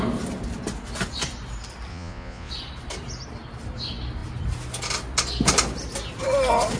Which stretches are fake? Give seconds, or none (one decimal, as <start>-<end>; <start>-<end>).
1.9-2.5